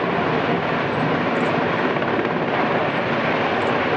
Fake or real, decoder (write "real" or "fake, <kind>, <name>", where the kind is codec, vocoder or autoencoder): real